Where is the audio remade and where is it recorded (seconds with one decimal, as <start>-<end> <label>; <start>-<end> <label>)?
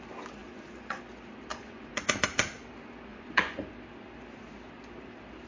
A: 0.0-0.4 recorded; 0.4-1.0 remade; 1.0-1.5 recorded; 1.5-2.1 remade; 2.1-3.1 recorded; 3.1-3.7 remade; 3.7-5.5 recorded